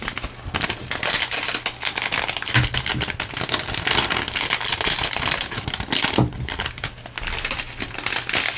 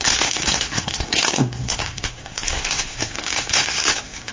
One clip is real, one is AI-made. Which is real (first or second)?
first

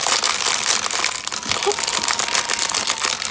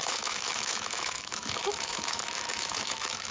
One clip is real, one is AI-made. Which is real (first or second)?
first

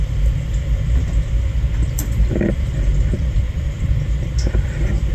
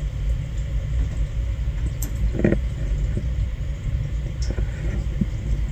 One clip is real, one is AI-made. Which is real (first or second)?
second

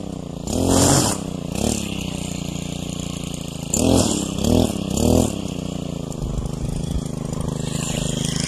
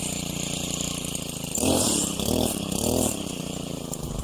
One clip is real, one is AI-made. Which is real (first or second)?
first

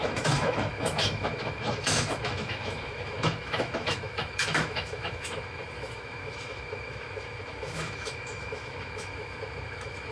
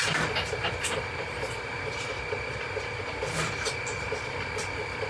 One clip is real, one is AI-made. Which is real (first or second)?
second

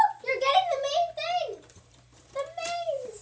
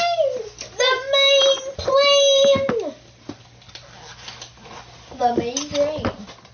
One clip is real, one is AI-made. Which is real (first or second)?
second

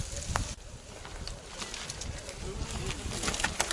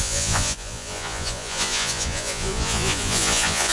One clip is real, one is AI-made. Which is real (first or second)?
first